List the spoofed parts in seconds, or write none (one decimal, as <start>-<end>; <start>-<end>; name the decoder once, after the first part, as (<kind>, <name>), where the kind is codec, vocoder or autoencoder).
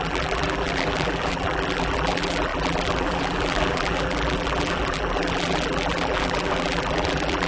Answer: 0.0-7.5 (vocoder, BigVGAN v2)